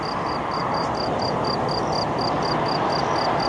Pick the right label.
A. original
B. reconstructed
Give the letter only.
A